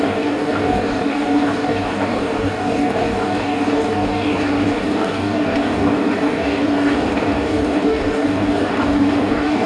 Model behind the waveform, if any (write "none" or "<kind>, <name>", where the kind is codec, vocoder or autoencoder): codec, DAC